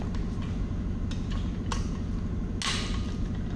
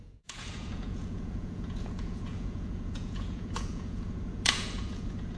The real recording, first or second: first